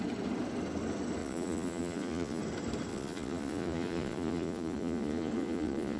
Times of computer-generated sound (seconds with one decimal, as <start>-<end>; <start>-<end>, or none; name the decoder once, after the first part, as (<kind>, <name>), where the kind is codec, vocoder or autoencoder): 1.2-2.4 (vocoder, Vocos); 2.9-6.0